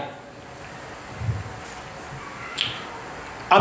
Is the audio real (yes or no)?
yes